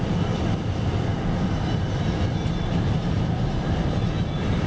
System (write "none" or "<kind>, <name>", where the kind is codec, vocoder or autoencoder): none